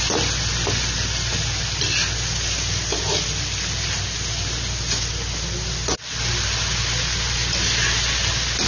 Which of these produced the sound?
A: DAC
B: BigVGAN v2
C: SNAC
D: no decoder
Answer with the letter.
D